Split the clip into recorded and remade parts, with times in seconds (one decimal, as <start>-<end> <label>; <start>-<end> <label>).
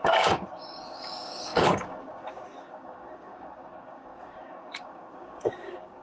0.0-6.0 remade